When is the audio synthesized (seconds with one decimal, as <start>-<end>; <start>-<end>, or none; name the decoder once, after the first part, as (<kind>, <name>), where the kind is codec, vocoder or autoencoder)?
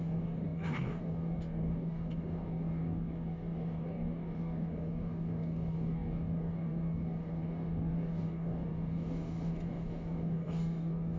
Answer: 0.0-11.2 (codec, DAC)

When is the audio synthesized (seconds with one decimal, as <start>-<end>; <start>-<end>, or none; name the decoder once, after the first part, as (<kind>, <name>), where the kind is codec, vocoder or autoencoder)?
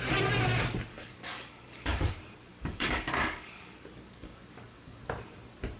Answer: 0.9-2.1 (codec, DAC); 2.5-5.0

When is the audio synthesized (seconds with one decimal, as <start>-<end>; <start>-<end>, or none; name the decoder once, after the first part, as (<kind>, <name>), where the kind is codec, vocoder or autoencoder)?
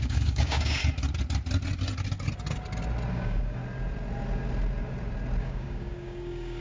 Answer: 0.0-0.8 (codec, DAC); 3.1-3.6; 5.4-6.6